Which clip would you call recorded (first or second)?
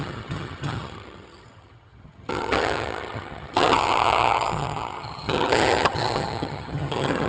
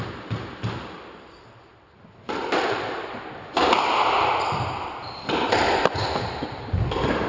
second